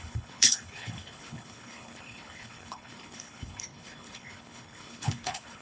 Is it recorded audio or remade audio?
remade